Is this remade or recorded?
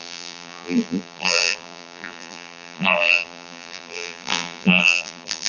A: remade